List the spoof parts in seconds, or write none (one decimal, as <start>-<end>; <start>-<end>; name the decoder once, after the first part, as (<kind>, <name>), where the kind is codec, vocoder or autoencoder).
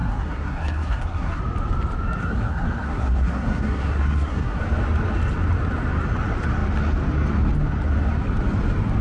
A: 0.0-1.4 (codec, SNAC); 2.2-4.6